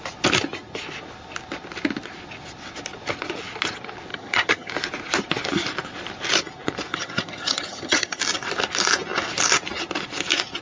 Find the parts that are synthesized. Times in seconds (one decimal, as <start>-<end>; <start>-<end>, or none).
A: 4.1-4.7; 6.9-8.2